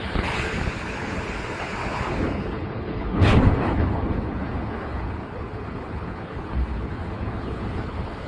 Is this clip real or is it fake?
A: fake